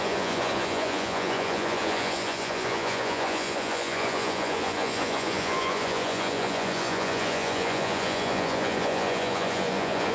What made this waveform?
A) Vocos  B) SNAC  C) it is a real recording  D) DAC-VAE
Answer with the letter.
A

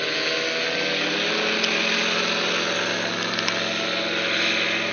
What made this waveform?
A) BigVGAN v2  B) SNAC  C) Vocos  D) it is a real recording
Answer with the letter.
D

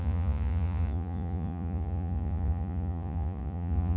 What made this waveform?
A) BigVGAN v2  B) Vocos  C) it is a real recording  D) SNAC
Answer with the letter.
B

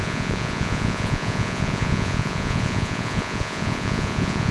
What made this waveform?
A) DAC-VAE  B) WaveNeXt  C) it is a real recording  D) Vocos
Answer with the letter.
D